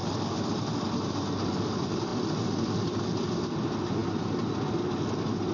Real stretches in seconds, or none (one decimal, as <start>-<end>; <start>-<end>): 0.0-5.5